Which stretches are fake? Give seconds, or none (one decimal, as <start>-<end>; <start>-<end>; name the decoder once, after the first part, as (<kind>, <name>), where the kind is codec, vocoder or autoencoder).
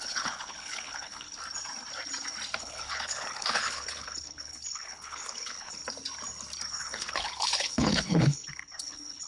0.0-1.4 (codec, HILCodec); 2.6-5.8; 6.7-9.3